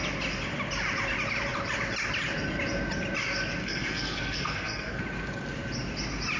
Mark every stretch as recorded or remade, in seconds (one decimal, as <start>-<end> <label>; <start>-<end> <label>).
0.0-3.6 recorded; 3.6-5.0 remade; 5.0-6.4 recorded